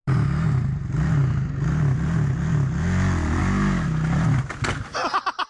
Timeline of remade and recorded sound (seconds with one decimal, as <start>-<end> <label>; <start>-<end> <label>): 0.0-5.5 recorded